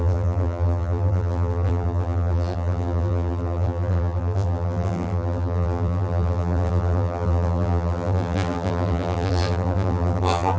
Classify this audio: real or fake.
fake